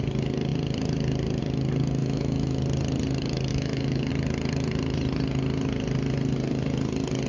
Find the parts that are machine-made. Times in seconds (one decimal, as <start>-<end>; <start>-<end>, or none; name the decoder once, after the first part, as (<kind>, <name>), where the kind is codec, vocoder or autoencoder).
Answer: 2.0-2.6 (autoencoder, DAC-VAE); 3.5-4.1